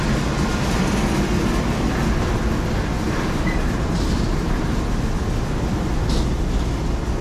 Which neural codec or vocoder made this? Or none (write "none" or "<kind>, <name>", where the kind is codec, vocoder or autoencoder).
none